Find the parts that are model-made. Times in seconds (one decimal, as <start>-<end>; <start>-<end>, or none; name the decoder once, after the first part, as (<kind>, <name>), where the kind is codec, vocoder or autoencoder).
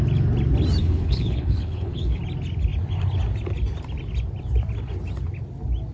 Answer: 0.8-2.2 (codec, HILCodec)